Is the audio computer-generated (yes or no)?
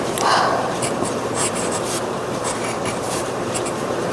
yes